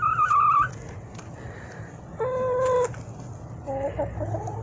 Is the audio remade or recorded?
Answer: recorded